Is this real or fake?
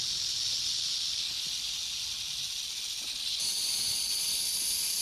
real